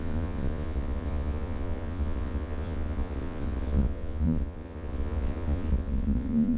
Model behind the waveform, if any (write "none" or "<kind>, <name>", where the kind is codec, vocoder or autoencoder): vocoder, Vocos